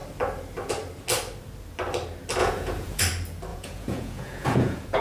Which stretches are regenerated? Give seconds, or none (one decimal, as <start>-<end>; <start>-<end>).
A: 2.4-3.0; 3.5-5.0